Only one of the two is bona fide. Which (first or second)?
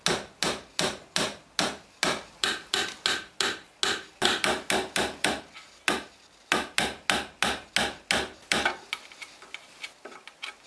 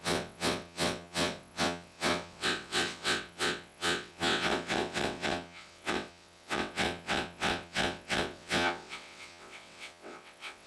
first